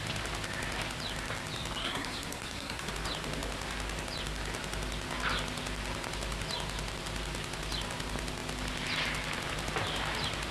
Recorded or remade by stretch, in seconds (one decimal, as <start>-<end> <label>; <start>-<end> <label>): 0.0-1.8 recorded; 1.8-2.9 remade; 2.9-10.5 recorded